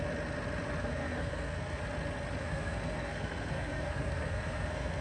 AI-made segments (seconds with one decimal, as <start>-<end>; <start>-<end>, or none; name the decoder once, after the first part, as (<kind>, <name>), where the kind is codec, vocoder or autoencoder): 0.8-1.8 (codec, SNAC); 2.4-5.0